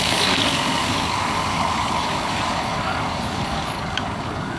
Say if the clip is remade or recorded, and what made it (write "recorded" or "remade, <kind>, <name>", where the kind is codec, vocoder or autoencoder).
remade, codec, DAC